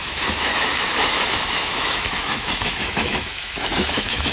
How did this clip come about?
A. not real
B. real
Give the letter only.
A